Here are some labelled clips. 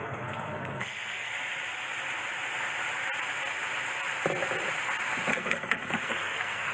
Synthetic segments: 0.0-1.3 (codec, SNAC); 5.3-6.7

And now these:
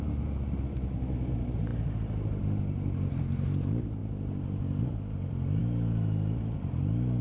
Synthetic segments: none

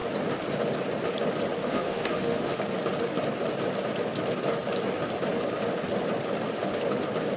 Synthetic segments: 1.6-2.6 (autoencoder, DAC-VAE)

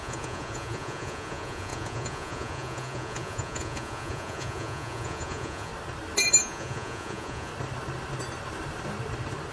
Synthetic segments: 0.0-5.7 (vocoder, Vocos); 6.4-7.5

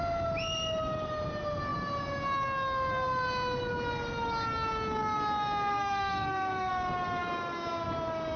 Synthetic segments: 5.7-6.7 (codec, SNAC)

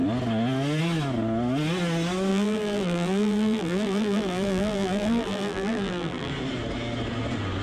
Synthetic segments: 2.3-6.3 (vocoder, BigVGAN v2)

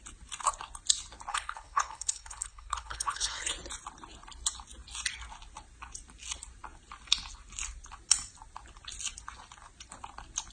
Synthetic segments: 1.3-3.5 (codec, HILCodec)

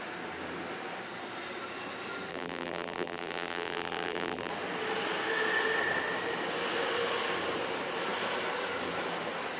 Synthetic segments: 2.3-4.5 (vocoder, BigVGAN v2)